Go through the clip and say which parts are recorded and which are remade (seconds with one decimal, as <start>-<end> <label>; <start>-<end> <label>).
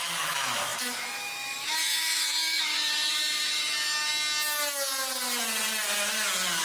0.0-4.1 remade; 4.1-6.6 recorded